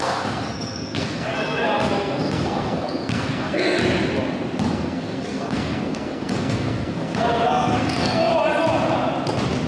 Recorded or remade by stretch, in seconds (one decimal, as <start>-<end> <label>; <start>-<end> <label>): 0.0-3.8 remade; 3.8-4.7 recorded; 4.7-8.3 remade; 8.3-9.7 recorded